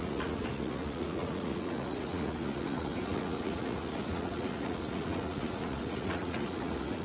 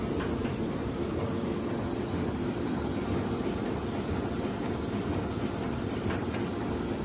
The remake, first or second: first